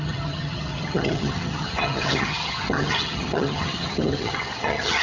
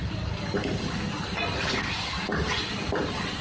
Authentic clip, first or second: second